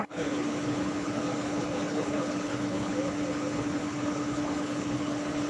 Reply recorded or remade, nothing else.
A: remade